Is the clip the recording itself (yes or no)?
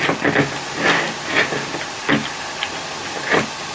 yes